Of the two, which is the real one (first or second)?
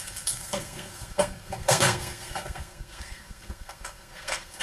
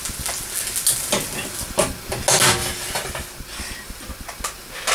second